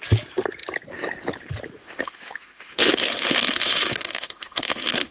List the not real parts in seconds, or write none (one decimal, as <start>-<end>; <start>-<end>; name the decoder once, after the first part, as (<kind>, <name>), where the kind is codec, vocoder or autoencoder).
1.8-5.1 (autoencoder, DAC-VAE)